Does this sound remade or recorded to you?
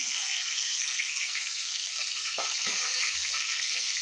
remade